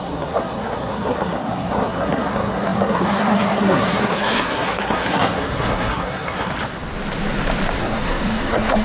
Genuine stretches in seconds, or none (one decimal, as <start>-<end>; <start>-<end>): 6.5-7.8